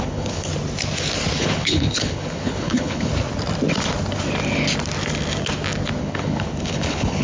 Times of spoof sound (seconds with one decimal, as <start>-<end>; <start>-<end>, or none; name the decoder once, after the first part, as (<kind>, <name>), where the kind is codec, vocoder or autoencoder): 0.0-0.5 (codec, HILCodec); 1.4-3.1; 6.0-7.2